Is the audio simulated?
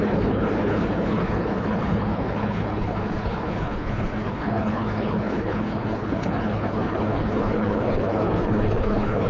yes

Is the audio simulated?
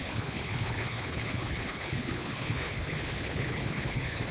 yes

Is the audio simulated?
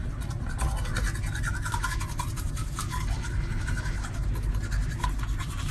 no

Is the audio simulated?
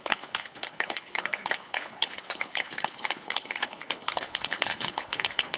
yes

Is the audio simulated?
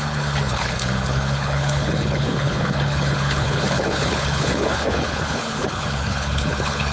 yes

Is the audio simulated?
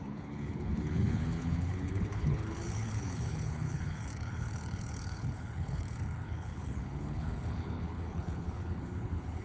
yes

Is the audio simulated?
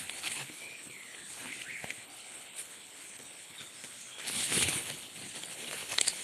yes